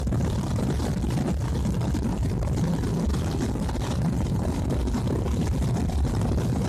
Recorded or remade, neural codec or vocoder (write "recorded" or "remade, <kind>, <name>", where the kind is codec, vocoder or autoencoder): remade, vocoder, BigVGAN v2